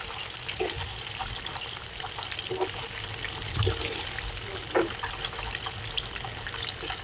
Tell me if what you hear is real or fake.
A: real